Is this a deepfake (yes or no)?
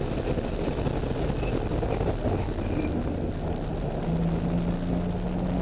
no